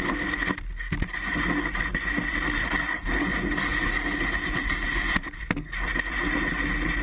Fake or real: real